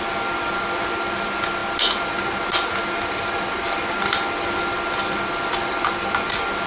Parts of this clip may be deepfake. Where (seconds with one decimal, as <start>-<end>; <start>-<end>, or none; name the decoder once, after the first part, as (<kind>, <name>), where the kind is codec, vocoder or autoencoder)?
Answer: none